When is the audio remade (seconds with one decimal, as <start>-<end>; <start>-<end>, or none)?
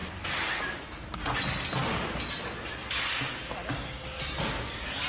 0.0-0.8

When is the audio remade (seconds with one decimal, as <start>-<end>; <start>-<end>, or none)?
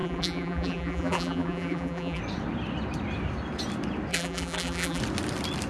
0.0-2.2; 4.1-5.0